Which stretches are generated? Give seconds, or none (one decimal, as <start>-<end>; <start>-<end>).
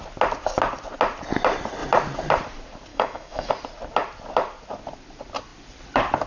2.9-3.5